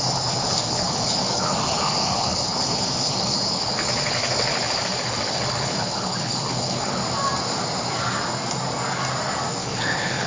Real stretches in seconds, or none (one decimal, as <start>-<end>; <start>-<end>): 7.0-9.6